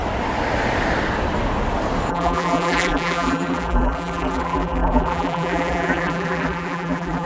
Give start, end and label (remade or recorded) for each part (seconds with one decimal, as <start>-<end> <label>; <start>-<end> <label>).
0.0-2.1 recorded; 2.1-7.3 remade